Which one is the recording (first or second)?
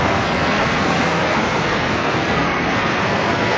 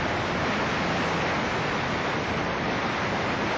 second